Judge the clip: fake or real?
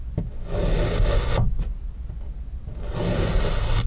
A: real